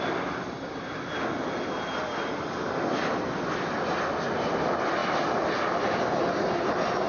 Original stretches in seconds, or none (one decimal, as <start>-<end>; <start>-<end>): 0.0-7.1